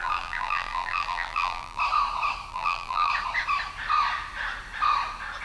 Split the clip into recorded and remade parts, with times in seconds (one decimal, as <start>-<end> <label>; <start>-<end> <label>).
0.0-1.8 remade; 1.8-2.5 recorded; 2.5-3.1 remade; 3.1-5.4 recorded